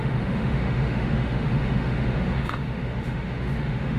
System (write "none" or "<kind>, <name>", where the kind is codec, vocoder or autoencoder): autoencoder, DAC-VAE